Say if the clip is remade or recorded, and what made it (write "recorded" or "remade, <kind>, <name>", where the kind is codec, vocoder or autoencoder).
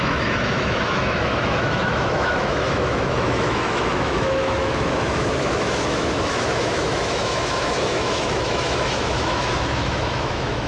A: remade, autoencoder, DAC-VAE